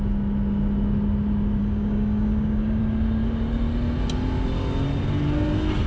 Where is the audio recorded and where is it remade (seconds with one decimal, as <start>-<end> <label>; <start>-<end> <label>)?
0.0-1.6 recorded; 1.6-2.8 remade; 2.8-5.9 recorded